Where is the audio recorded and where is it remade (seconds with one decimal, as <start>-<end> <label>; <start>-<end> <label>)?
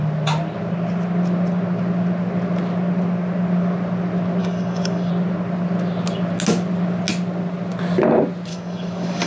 0.0-4.4 recorded; 4.4-5.1 remade; 5.1-8.5 recorded; 8.5-9.3 remade